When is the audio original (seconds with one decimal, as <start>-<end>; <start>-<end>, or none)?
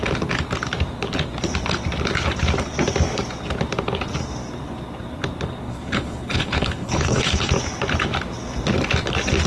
0.0-5.7; 7.5-9.5